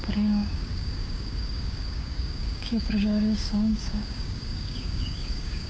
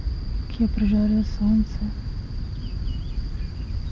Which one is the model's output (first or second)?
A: first